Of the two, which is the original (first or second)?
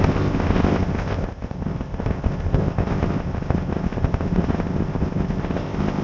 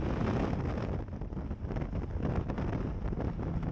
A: second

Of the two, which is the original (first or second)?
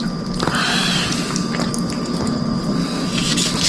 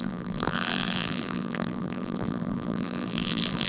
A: first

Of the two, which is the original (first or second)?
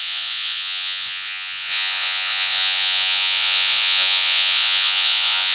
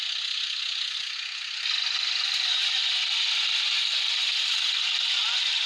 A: second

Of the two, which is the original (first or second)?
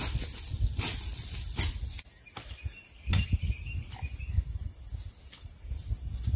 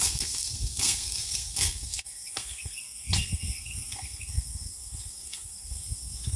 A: first